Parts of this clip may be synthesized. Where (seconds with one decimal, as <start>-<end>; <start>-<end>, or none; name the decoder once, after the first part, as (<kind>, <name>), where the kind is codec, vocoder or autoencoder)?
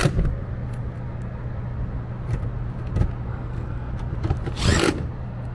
3.3-3.9 (codec, SNAC)